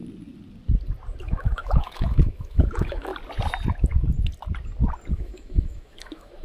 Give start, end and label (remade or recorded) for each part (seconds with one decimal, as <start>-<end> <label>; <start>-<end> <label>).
0.0-1.2 recorded; 1.2-3.1 remade; 3.1-5.1 recorded; 5.1-6.4 remade